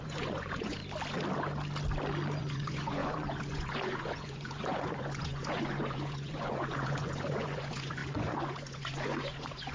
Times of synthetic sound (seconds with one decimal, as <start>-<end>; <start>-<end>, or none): 0.0-0.8; 2.4-9.7